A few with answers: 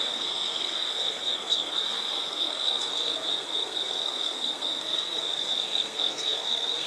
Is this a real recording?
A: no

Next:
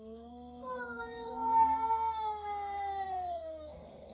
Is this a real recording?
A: no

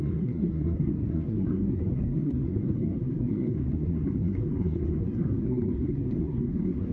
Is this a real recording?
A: no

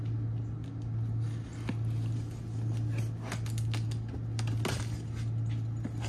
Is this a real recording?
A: yes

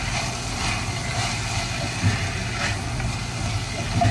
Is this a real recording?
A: yes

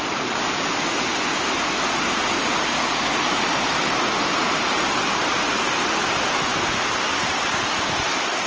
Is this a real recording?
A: yes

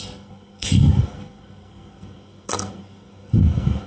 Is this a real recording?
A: no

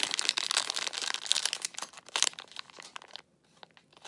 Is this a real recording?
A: yes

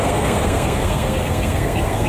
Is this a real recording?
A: no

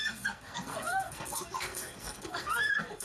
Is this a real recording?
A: no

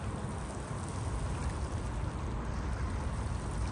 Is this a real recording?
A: yes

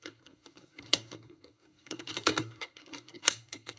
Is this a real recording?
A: no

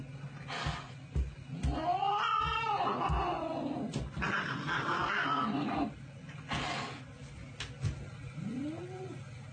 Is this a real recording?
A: yes